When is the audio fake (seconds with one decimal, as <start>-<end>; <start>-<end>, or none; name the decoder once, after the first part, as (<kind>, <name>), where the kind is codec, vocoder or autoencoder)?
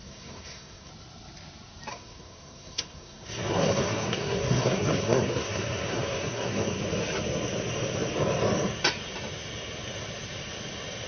0.0-0.9 (codec, SNAC); 1.9-6.8